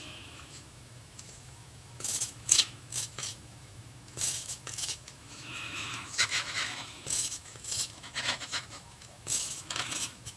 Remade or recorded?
remade